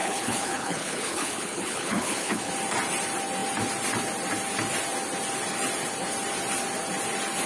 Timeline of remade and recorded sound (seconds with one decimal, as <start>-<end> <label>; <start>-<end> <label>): 0.0-2.5 remade; 2.5-7.5 recorded